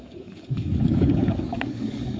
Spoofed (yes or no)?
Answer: yes